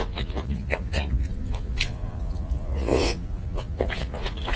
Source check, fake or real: fake